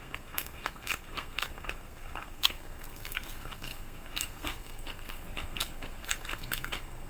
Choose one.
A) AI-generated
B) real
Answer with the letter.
A